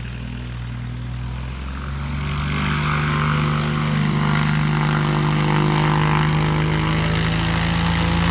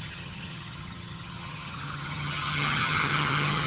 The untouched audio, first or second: first